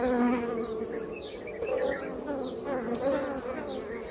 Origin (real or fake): real